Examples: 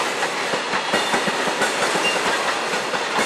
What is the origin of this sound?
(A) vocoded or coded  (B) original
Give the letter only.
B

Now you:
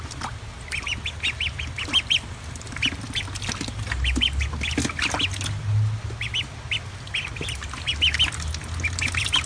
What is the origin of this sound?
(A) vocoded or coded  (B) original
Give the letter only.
B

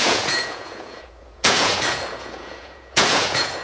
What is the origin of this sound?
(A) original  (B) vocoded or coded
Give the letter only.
B